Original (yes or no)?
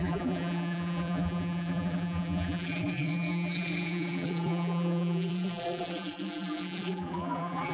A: no